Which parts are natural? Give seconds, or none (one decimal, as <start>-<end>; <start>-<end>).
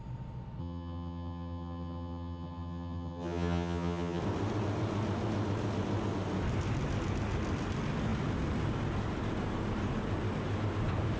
0.0-0.6; 4.2-11.2